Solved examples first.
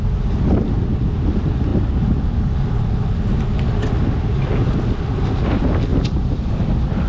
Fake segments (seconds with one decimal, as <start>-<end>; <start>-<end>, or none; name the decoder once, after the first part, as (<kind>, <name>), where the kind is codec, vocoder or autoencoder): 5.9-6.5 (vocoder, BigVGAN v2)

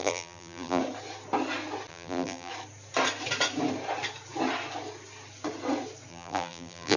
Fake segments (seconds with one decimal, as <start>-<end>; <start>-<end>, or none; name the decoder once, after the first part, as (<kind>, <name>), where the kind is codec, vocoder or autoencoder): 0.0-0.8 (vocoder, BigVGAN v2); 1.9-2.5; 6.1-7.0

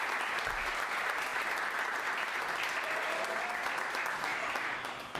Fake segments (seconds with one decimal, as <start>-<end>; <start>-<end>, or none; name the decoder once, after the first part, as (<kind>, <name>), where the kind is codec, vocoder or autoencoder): 4.3-5.2 (vocoder, BigVGAN v2)

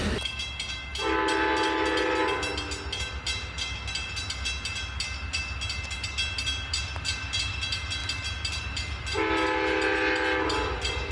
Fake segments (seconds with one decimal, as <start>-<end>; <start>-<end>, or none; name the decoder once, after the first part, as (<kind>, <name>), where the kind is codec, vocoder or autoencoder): none

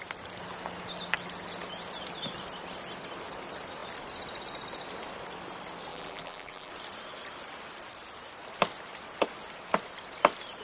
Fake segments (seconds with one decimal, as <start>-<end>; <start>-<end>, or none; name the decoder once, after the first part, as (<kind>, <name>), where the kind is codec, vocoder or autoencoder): 5.9-6.7 (vocoder, BigVGAN v2)

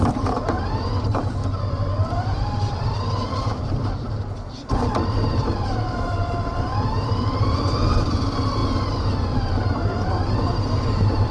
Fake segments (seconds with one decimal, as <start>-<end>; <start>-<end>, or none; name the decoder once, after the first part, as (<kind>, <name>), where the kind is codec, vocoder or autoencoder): 0.0-11.3 (vocoder, BigVGAN v2)

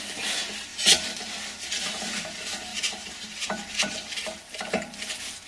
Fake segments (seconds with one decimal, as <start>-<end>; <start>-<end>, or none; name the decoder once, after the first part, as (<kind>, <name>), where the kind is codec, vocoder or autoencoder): 2.7-4.9 (vocoder, BigVGAN v2)